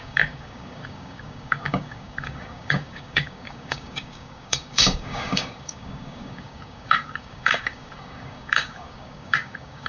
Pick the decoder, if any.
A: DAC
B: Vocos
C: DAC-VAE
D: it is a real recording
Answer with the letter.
A